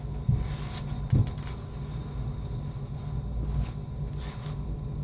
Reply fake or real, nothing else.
real